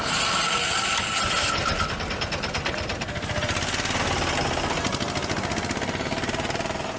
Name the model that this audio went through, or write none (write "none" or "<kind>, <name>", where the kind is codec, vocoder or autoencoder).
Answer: none